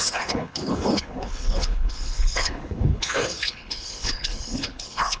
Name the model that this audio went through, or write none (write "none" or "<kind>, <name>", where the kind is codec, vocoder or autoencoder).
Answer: codec, HILCodec